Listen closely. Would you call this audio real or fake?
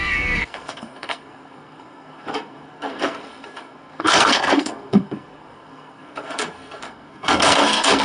fake